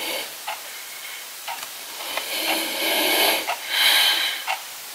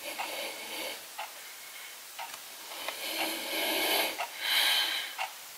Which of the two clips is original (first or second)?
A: second